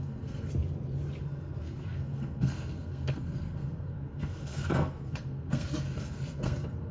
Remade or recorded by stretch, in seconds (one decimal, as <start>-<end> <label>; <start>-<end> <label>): 0.0-0.5 remade; 0.5-1.2 recorded; 1.2-6.9 remade

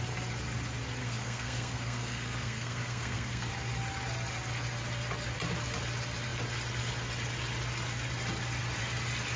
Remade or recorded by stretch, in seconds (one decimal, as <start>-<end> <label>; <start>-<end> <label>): 0.0-1.0 recorded; 1.0-3.5 remade; 3.5-9.4 recorded

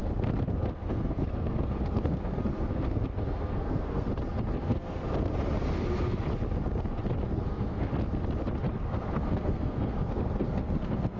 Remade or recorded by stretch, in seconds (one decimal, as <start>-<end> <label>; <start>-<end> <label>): 0.0-4.1 remade; 4.1-4.6 recorded; 4.6-5.0 remade; 5.0-7.3 recorded; 7.3-7.9 remade; 7.9-8.7 recorded; 8.7-11.2 remade

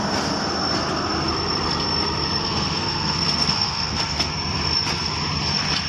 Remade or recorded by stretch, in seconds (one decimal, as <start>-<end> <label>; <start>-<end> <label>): 0.0-2.4 recorded; 2.4-4.3 remade; 4.3-5.9 recorded

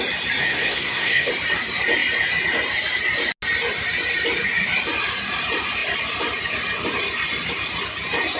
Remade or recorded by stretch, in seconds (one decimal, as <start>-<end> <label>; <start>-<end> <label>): 0.0-0.4 recorded; 0.4-1.3 remade; 1.3-8.4 recorded